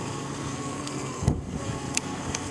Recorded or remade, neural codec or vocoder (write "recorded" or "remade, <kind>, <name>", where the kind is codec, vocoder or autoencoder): remade, codec, SNAC